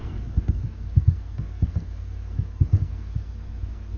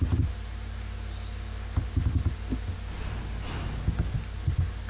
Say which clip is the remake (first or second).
first